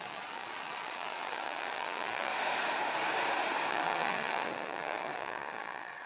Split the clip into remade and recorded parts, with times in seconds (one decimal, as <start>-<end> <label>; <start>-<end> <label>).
0.0-2.3 remade; 2.3-3.7 recorded; 3.7-6.1 remade